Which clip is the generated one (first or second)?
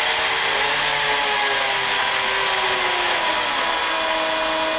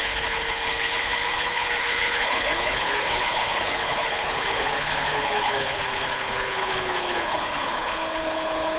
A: second